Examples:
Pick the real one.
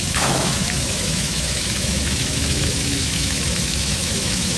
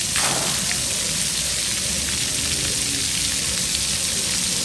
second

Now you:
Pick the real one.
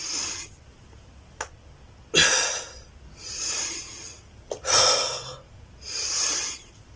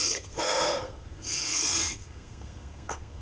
first